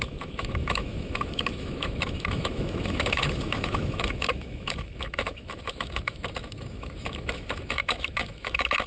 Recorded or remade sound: remade